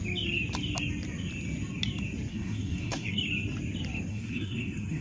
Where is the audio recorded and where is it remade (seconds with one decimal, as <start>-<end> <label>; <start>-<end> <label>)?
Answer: 0.0-2.3 recorded; 2.3-3.2 remade; 3.2-4.1 recorded; 4.1-5.0 remade